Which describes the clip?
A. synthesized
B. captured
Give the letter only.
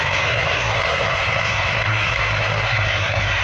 A